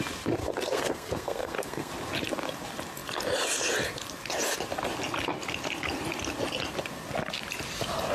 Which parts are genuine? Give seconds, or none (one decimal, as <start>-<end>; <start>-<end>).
0.0-0.4; 1.9-8.1